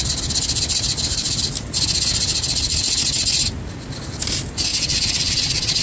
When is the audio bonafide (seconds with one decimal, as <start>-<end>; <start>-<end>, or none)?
0.0-4.7